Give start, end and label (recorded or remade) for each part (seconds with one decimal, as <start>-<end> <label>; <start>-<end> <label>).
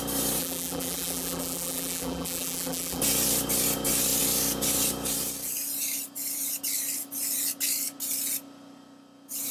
0.0-0.4 recorded; 0.4-3.0 remade; 3.0-9.5 recorded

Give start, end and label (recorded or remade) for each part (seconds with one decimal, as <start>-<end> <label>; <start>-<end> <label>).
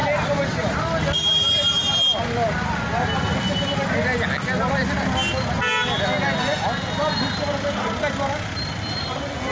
0.0-9.5 recorded